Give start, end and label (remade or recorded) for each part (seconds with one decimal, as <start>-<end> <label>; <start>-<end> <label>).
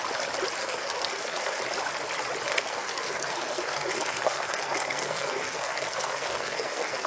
0.0-0.6 recorded; 0.6-1.6 remade; 1.6-2.5 recorded; 2.5-7.1 remade